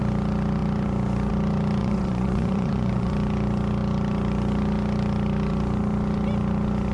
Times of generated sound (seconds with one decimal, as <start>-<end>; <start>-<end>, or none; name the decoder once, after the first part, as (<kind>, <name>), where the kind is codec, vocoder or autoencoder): 1.8-3.1 (vocoder, Vocos)